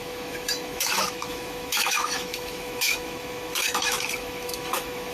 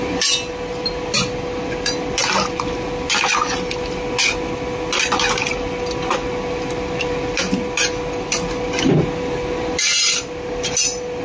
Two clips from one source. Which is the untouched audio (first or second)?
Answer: second